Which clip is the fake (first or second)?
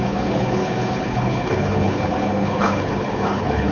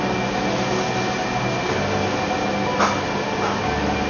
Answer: first